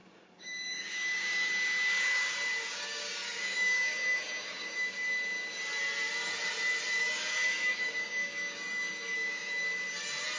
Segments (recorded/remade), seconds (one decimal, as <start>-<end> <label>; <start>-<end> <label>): 0.0-1.5 remade; 1.5-2.6 recorded; 2.6-5.1 remade; 5.1-7.0 recorded; 7.0-9.5 remade; 9.5-10.4 recorded